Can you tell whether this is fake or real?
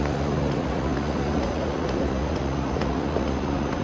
fake